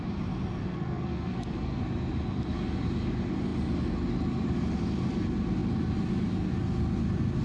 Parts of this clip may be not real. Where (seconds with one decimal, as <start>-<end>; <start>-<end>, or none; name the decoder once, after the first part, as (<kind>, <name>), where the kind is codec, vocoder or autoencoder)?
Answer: 0.6-1.8 (codec, SNAC)